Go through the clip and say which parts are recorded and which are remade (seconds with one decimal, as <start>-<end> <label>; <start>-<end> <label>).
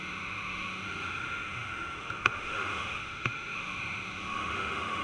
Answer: 0.0-5.0 remade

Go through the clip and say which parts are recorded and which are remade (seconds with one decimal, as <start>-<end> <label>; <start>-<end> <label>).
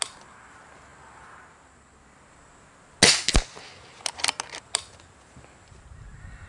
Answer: 0.0-6.5 recorded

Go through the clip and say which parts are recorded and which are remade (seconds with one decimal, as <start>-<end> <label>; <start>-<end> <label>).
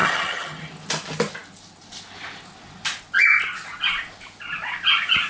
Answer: 0.0-0.7 remade; 0.7-5.3 recorded